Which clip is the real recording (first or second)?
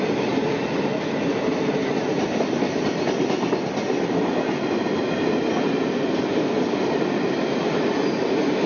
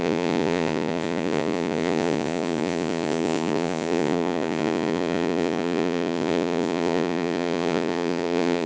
first